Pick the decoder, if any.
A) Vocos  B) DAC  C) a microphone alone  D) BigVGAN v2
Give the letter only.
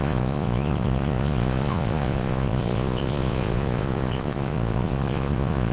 A